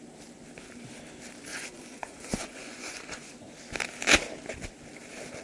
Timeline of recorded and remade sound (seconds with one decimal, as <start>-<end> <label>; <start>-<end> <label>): 0.0-1.5 recorded; 1.5-3.5 remade; 3.5-5.4 recorded